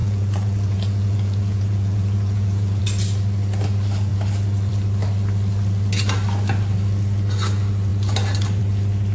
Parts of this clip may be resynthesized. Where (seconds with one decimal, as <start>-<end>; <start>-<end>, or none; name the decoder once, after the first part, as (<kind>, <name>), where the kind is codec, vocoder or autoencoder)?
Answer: 0.0-2.8 (vocoder, Vocos)